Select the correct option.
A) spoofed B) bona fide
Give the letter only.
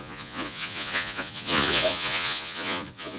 A